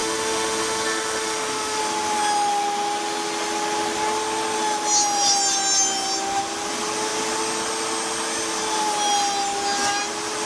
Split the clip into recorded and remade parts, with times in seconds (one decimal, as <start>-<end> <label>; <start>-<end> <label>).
0.0-1.8 remade; 1.8-10.5 recorded